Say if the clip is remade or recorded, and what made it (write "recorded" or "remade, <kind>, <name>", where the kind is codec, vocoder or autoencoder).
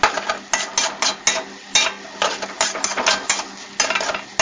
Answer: recorded